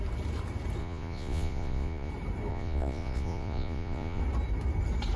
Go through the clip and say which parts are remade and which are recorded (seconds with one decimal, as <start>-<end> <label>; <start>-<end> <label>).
0.0-0.8 recorded; 0.8-2.1 remade; 2.1-2.5 recorded; 2.5-4.2 remade; 4.2-5.2 recorded